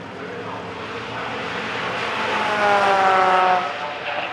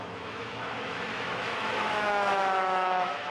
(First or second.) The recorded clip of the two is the first